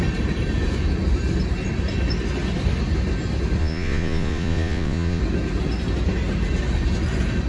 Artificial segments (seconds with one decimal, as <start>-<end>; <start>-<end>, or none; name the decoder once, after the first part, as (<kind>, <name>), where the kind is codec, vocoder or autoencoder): 3.6-5.2 (vocoder, Vocos)